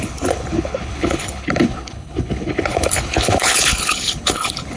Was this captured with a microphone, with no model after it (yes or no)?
no